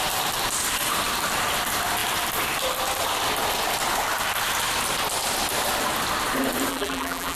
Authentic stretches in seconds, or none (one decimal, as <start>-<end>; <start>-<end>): 0.0-6.7